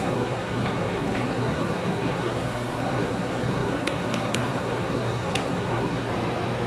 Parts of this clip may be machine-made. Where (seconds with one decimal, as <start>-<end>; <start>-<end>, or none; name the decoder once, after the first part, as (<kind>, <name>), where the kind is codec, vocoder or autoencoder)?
0.0-6.1 (codec, SNAC)